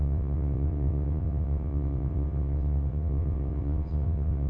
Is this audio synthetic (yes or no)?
yes